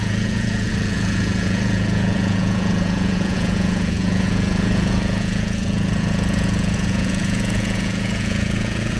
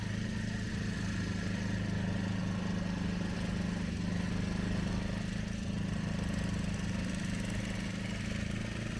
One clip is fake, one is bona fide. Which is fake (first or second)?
first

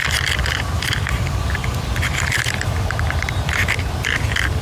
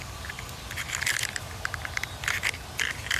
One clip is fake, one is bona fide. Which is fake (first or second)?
first